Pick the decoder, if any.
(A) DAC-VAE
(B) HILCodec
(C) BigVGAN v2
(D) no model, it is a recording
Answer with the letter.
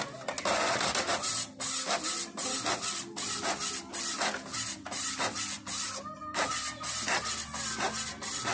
D